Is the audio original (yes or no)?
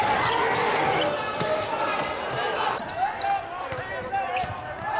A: yes